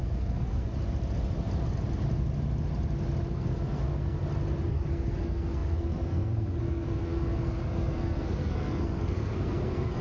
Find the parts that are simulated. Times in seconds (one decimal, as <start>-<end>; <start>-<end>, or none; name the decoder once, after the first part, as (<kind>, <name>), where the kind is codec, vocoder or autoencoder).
0.0-0.7 (codec, SNAC); 3.3-4.2; 4.7-10.0